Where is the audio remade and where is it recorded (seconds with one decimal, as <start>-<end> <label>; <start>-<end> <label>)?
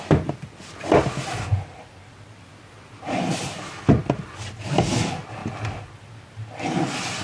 0.0-1.5 recorded; 1.5-2.4 remade; 2.4-7.2 recorded